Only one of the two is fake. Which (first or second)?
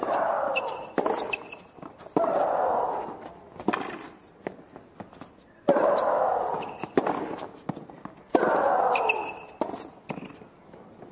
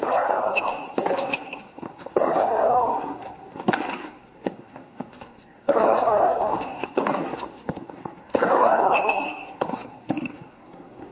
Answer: second